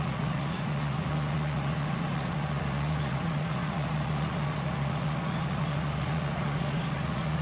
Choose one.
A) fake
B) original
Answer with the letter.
A